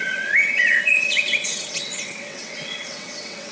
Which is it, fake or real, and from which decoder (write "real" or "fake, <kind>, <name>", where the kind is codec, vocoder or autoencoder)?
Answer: fake, vocoder, WaveNeXt